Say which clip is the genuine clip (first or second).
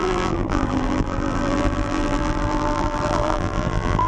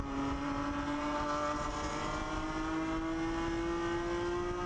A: second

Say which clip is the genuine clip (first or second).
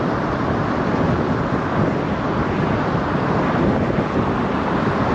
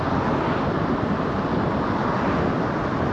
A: second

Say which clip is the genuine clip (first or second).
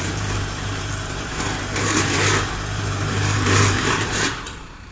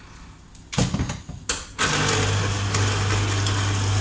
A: second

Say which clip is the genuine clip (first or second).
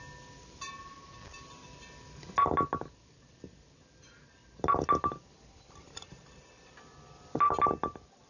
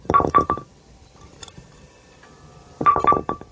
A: first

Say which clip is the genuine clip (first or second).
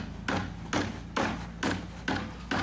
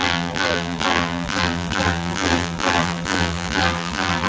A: first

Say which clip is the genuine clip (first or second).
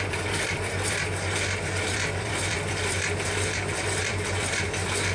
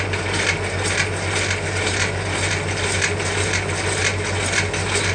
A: second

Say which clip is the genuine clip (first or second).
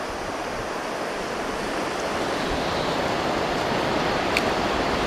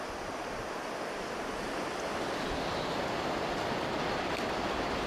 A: second